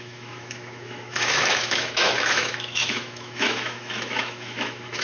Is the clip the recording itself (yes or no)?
no